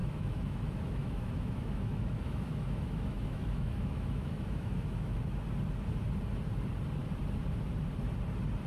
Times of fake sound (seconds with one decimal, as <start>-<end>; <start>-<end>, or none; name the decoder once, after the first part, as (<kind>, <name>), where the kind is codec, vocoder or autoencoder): 0.0-5.2 (autoencoder, DAC-VAE)